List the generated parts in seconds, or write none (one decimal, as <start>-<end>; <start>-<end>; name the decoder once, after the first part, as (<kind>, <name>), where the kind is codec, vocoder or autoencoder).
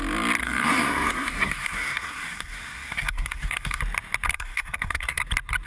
0.4-3.8 (codec, SNAC); 4.3-5.2